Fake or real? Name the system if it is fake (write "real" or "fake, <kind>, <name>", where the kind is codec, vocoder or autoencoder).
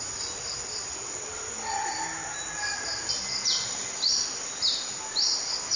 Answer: real